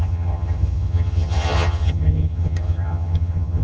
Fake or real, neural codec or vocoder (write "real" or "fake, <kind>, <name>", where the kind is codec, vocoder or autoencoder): fake, vocoder, HiFi-GAN